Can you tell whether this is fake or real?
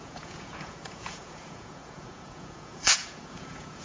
fake